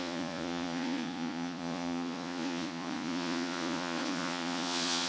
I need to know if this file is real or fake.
fake